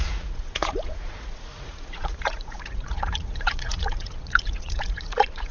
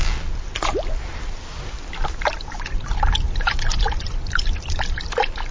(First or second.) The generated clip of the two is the first